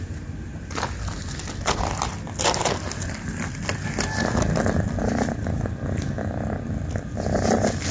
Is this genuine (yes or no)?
yes